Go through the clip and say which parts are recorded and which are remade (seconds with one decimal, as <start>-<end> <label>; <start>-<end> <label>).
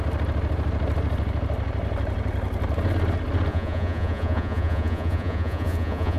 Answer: 0.0-3.5 recorded; 3.5-6.2 remade